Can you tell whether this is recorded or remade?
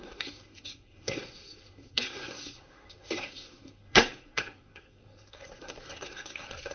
remade